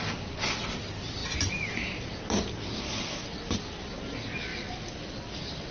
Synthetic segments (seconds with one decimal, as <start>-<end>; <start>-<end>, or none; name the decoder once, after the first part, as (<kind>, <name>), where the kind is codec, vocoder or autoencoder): none